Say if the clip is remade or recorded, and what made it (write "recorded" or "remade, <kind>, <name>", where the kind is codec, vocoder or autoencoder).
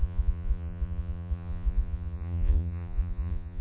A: remade, vocoder, Vocos